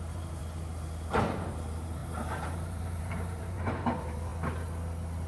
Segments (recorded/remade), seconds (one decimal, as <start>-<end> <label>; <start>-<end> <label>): 0.0-0.4 remade; 0.4-1.2 recorded; 1.2-4.3 remade; 4.3-5.3 recorded